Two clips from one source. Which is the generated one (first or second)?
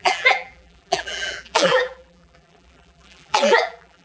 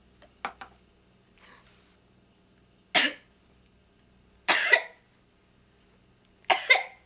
first